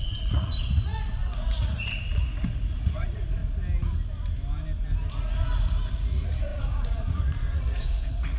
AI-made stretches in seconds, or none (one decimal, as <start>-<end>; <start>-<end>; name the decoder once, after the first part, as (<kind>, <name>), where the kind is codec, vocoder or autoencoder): 0.0-3.4 (vocoder, Vocos); 5.9-8.4